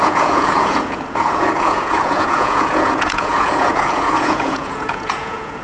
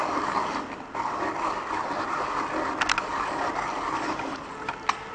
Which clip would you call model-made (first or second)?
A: first